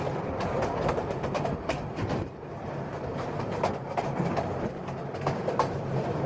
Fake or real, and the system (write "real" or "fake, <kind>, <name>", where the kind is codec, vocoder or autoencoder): fake, vocoder, BigVGAN v2